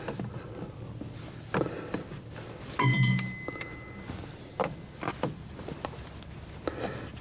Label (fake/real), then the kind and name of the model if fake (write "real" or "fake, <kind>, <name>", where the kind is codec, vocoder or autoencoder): real